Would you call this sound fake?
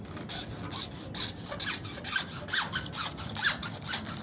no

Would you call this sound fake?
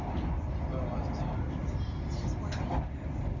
no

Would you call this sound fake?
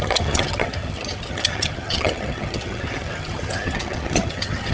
yes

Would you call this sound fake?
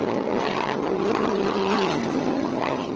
yes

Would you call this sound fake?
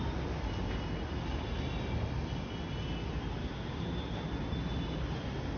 no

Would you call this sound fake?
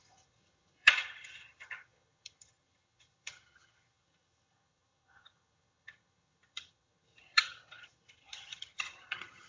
yes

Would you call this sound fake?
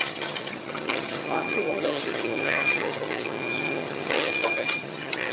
yes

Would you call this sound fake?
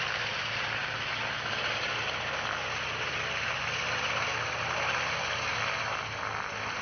no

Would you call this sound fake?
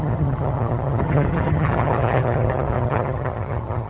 yes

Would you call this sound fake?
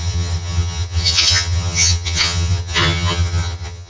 yes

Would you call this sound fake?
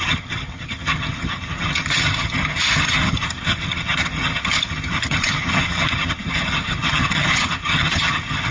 yes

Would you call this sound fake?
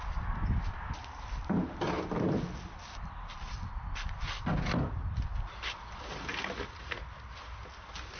no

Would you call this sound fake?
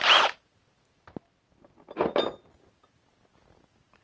no